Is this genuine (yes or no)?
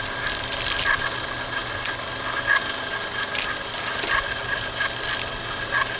yes